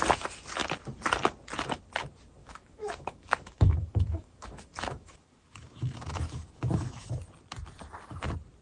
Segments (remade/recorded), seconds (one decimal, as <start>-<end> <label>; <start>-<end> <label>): 0.0-2.4 recorded; 2.4-7.1 remade; 7.1-8.6 recorded